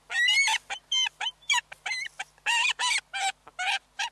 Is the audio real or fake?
real